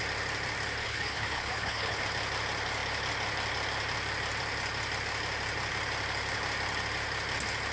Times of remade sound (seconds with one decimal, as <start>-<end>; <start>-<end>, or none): 0.8-2.0